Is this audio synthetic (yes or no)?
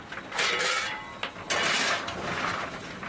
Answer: no